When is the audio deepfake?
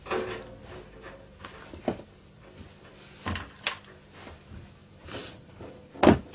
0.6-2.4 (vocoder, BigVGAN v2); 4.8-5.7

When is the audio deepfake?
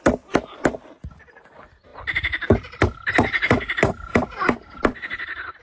1.9-5.6 (vocoder, BigVGAN v2)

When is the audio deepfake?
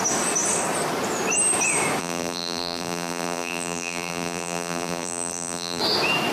2.0-5.8 (vocoder, BigVGAN v2)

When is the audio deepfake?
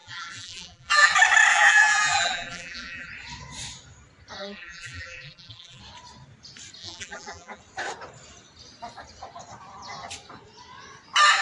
0.0-1.1 (vocoder, BigVGAN v2); 1.5-3.1; 4.4-5.8; 6.8-7.6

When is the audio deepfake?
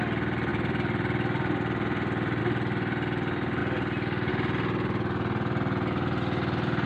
0.5-2.4 (vocoder, BigVGAN v2); 3.6-4.3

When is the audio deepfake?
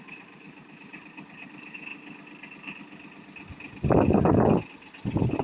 0.0-1.9 (vocoder, BigVGAN v2)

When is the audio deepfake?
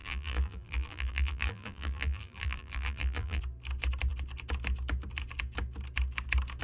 0.0-3.4 (vocoder, BigVGAN v2)